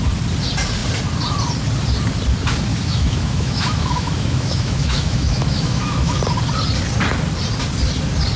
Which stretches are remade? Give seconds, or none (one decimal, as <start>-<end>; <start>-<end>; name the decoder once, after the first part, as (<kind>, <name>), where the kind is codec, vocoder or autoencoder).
2.7-6.2 (autoencoder, DAC-VAE)